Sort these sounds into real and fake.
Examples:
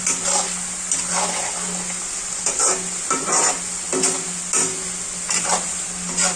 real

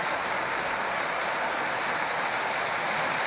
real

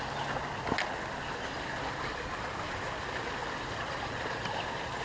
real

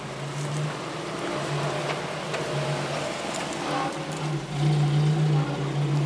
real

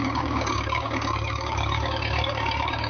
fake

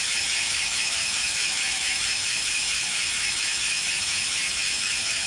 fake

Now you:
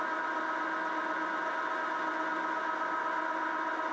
real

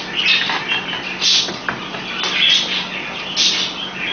real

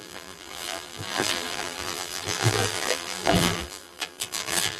fake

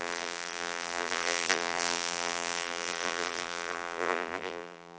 fake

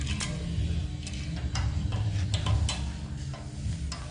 real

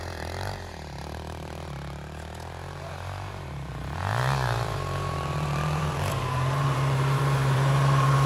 fake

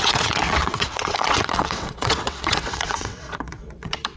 fake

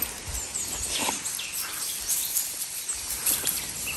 real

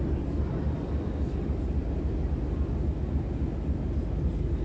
real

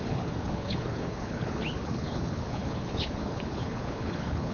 fake